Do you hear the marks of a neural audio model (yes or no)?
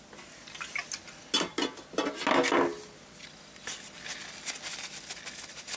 no